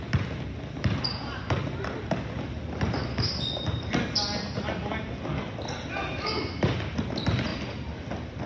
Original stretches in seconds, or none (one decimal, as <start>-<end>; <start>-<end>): 0.0-6.0; 6.5-8.5

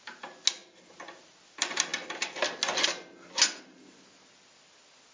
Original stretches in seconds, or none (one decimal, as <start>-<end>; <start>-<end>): 0.0-5.1

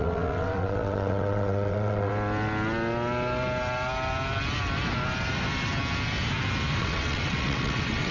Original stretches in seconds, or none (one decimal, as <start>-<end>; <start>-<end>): 2.1-6.8

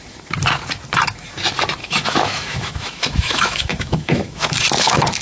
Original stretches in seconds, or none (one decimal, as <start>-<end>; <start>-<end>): 0.0-1.8